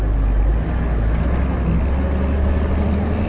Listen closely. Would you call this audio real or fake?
real